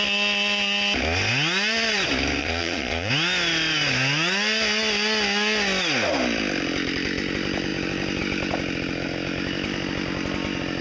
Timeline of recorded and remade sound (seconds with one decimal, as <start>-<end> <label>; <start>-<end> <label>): 0.0-2.4 recorded; 2.4-3.1 remade; 3.1-10.8 recorded